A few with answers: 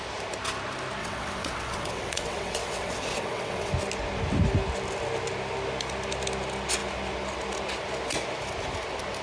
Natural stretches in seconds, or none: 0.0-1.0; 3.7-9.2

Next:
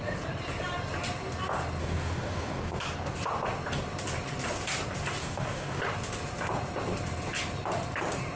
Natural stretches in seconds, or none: 0.0-1.8; 2.8-5.2; 5.8-8.4

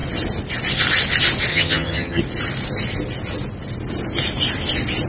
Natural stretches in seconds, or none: 0.0-1.5; 2.2-5.1

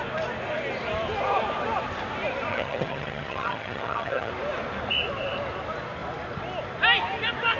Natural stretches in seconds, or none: 0.0-2.5; 4.3-7.6

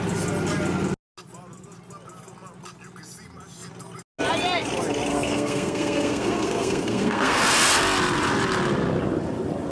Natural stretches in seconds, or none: 0.0-5.1; 7.4-9.7

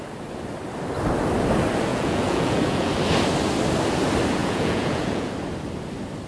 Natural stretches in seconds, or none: 0.0-1.9; 2.9-4.4; 5.3-6.3